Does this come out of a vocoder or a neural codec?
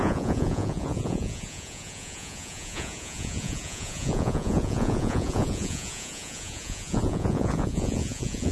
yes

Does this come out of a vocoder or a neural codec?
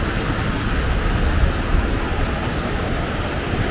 no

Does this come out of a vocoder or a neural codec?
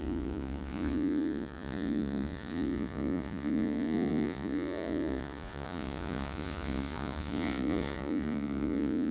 yes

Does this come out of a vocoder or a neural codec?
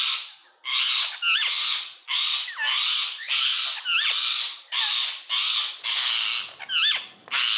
no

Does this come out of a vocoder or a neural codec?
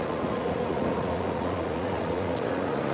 yes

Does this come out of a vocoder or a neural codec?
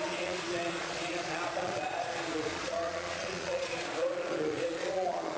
yes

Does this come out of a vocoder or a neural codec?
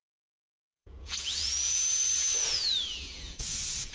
yes